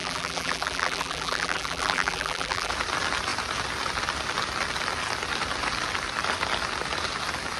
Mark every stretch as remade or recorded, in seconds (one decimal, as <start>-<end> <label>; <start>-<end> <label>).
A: 0.0-2.7 remade; 2.7-7.6 recorded